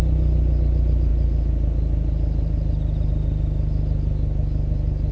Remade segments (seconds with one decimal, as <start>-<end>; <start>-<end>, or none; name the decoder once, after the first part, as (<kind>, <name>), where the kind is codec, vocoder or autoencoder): none